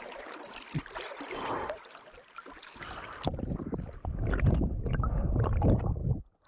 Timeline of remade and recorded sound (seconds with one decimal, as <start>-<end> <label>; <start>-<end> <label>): 0.0-6.5 recorded